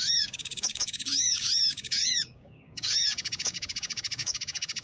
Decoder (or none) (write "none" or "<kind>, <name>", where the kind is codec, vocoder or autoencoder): codec, DAC